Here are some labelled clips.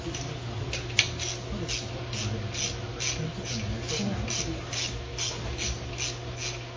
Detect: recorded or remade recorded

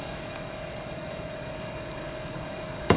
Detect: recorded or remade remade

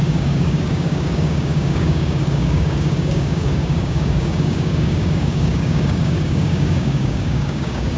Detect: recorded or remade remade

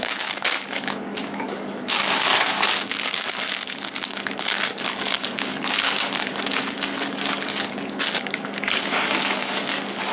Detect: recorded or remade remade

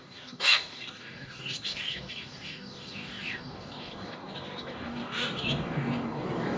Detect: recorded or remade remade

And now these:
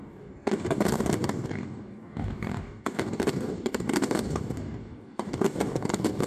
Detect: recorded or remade remade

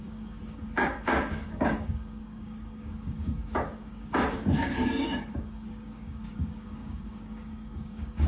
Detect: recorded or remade remade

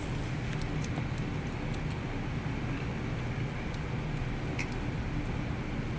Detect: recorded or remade recorded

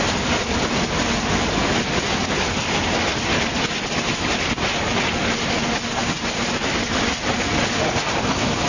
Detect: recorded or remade recorded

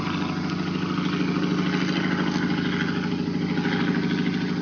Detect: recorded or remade recorded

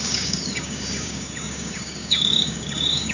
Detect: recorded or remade remade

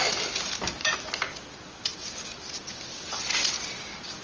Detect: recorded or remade recorded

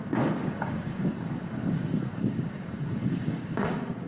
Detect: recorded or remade remade